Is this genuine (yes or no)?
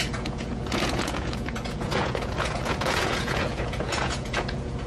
no